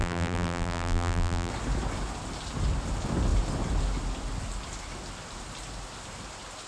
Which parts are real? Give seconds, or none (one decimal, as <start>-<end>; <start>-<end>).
1.5-6.7

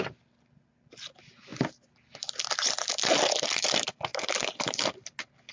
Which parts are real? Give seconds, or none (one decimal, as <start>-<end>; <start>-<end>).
0.0-5.5

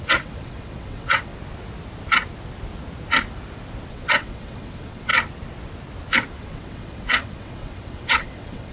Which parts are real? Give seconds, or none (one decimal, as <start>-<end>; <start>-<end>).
1.3-3.9; 5.1-6.4

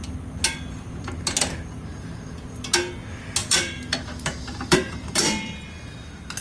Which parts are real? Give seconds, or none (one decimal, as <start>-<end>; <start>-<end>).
0.0-3.4; 5.7-6.4

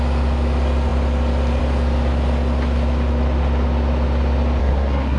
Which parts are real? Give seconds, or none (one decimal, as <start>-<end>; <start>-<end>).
0.0-4.6

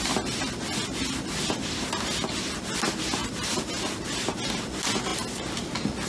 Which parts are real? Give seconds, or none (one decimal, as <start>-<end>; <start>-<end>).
0.0-3.2; 4.1-6.1